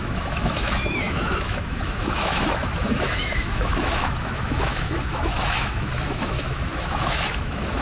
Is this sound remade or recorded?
remade